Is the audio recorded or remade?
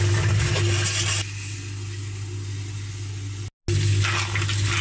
recorded